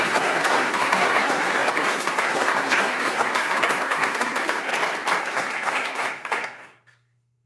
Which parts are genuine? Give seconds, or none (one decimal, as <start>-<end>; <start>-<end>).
4.7-5.2